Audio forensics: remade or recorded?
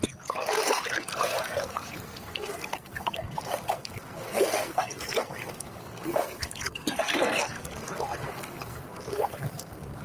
remade